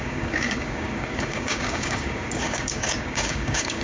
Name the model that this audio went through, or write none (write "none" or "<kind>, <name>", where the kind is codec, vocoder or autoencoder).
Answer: codec, DAC